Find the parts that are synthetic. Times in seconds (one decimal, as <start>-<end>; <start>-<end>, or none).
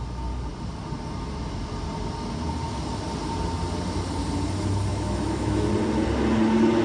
4.9-5.7